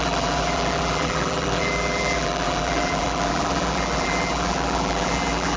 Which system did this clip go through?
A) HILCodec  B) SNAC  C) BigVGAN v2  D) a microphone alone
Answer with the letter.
C